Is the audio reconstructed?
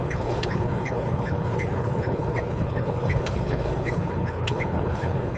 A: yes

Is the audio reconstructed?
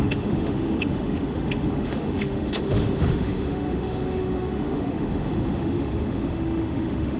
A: yes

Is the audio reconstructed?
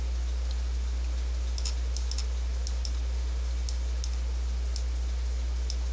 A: no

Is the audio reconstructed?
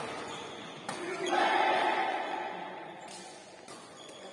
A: yes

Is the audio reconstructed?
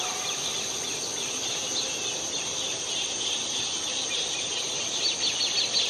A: no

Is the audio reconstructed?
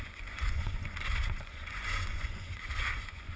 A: yes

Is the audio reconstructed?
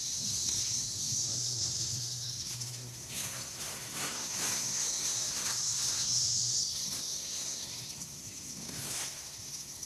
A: yes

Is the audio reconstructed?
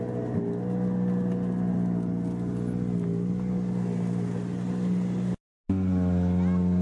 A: no